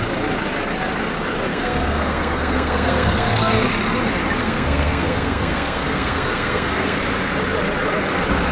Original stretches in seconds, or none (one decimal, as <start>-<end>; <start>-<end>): 0.0-1.5; 3.7-4.4; 7.0-8.5